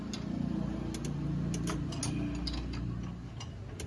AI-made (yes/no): no